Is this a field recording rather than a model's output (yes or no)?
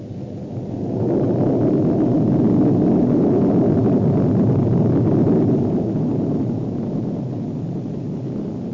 yes